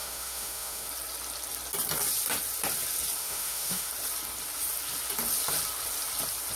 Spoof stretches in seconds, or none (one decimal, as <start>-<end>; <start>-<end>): 0.0-0.9; 3.2-3.9